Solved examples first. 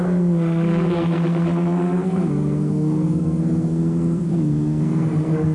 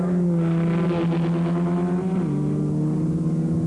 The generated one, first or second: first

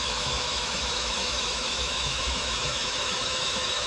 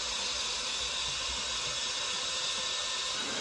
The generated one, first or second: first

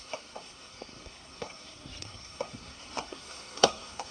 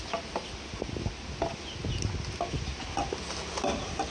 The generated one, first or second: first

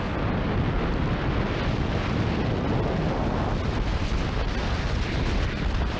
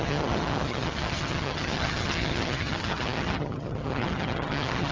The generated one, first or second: second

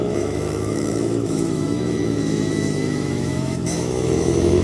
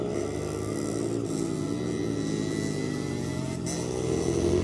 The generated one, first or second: first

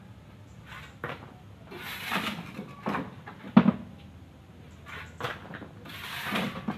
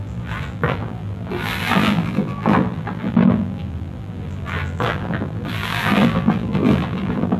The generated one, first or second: second